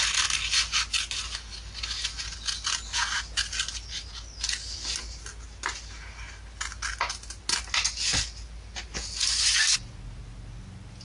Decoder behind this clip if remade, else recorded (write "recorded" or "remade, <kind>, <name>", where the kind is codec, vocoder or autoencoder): recorded